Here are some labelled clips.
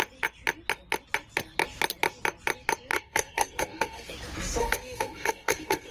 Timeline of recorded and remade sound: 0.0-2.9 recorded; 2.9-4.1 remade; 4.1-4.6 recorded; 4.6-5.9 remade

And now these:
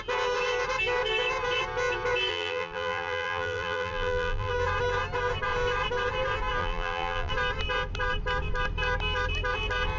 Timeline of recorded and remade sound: 0.0-2.3 recorded; 2.3-4.5 remade; 4.5-6.6 recorded; 6.6-7.3 remade; 7.3-10.0 recorded

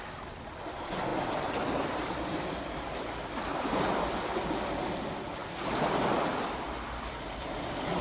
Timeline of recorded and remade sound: 0.0-8.0 recorded

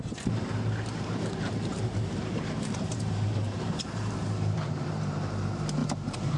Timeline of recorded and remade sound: 0.0-6.4 remade

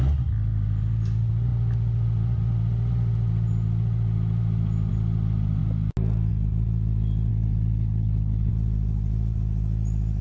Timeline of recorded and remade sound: 0.0-7.3 recorded; 7.3-8.5 remade; 8.5-10.2 recorded

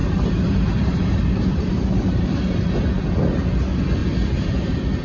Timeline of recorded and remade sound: 0.0-3.0 remade; 3.0-5.0 recorded

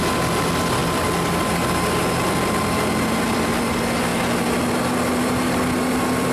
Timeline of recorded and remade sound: 0.0-6.3 recorded

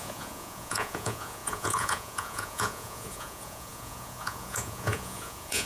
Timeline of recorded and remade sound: 0.0-5.7 remade